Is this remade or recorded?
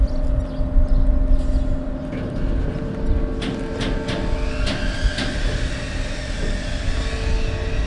recorded